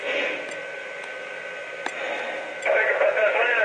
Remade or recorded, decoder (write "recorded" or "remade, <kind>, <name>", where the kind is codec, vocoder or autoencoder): recorded